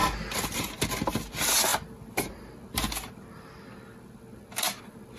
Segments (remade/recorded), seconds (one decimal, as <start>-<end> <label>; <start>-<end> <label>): 0.0-5.2 recorded